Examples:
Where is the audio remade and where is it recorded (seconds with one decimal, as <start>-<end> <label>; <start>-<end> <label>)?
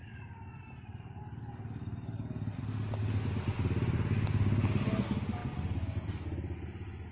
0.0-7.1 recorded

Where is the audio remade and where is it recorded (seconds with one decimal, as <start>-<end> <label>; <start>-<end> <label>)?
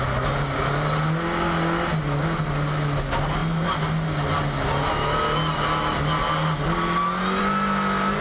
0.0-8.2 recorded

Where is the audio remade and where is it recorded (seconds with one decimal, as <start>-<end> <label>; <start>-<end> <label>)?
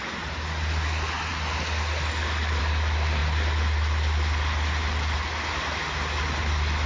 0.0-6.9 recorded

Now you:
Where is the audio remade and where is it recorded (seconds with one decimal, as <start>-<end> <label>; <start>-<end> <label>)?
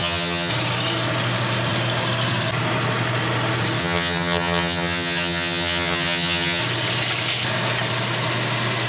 0.0-0.5 remade; 0.5-3.8 recorded; 3.8-6.6 remade; 6.6-8.9 recorded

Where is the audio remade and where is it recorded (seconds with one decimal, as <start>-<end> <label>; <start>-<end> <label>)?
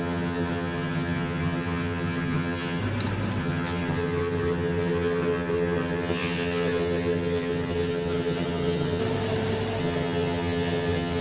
0.0-2.8 remade; 2.8-3.4 recorded; 3.4-9.0 remade; 9.0-9.8 recorded; 9.8-11.2 remade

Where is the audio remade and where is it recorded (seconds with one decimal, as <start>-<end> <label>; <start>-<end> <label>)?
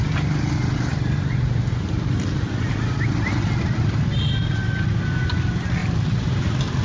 0.0-6.8 recorded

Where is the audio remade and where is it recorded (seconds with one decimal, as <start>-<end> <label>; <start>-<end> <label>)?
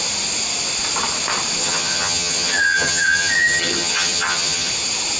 0.0-1.6 recorded; 1.6-4.7 remade; 4.7-5.2 recorded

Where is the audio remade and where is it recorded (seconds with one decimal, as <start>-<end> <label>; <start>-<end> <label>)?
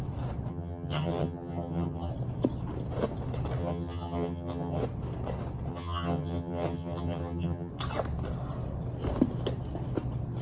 0.0-0.5 recorded; 0.5-2.1 remade; 2.1-3.6 recorded; 3.6-4.8 remade; 4.8-5.7 recorded; 5.7-7.7 remade; 7.7-10.4 recorded